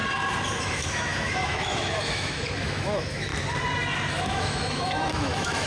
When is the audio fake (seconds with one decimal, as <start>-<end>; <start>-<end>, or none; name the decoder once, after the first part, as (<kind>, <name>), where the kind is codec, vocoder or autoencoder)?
0.6-3.3 (autoencoder, DAC-VAE); 4.2-5.7